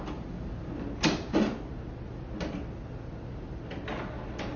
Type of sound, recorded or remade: recorded